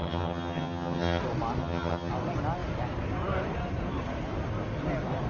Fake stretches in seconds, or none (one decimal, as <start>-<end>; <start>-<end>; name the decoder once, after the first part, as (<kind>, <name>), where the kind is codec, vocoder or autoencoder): 0.0-1.2 (vocoder, HiFi-GAN); 1.6-2.1